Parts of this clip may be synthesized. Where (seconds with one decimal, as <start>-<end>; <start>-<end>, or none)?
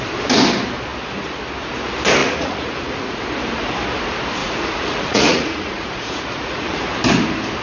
2.2-3.2; 4.4-6.8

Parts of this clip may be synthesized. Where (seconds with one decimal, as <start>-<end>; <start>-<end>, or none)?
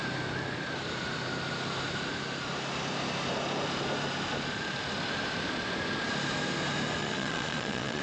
7.0-8.0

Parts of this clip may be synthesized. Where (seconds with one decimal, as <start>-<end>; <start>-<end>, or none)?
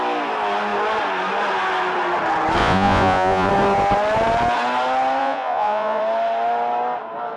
2.6-3.5; 5.2-6.0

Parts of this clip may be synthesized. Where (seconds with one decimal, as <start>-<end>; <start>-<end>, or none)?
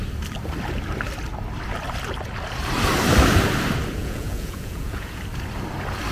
4.0-5.2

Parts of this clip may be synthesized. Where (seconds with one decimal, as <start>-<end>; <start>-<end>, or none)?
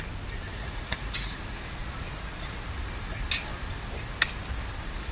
0.5-1.4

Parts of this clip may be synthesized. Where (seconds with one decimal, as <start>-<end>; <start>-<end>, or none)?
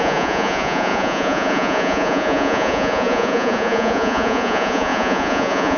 0.0-5.8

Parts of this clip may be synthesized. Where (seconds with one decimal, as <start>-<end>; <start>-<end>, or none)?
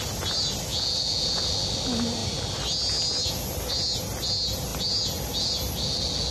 0.7-1.5